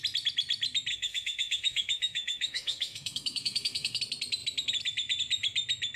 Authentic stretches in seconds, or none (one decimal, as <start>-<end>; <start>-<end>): 0.0-0.9; 4.0-6.0

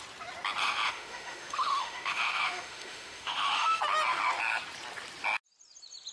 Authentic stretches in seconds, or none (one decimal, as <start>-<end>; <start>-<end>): 0.0-0.6; 3.8-6.1

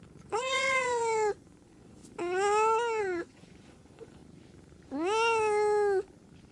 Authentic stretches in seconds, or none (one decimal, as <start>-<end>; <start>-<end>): 2.0-3.0; 4.2-6.5

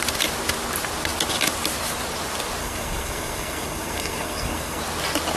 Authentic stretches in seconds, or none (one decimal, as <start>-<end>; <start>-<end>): 0.0-2.6; 4.8-5.4

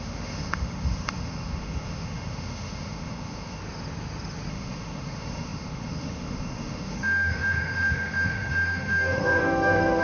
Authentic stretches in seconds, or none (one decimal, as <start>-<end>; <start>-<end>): 3.6-4.5